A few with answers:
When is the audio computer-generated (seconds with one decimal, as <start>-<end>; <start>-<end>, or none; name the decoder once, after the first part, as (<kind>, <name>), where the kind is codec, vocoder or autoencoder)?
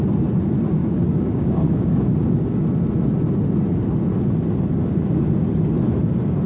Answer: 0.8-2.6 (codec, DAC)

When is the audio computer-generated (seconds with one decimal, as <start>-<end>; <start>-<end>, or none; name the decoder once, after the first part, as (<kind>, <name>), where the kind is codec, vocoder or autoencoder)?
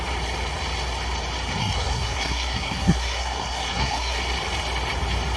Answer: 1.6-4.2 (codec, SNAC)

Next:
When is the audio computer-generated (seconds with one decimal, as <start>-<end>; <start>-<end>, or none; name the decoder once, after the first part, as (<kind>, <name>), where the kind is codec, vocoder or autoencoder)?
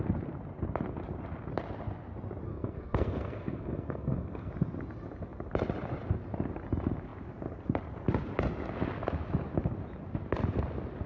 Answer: 2.5-4.5 (codec, SNAC)